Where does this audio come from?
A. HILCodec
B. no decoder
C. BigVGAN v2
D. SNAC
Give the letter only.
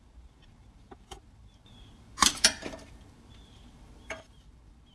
C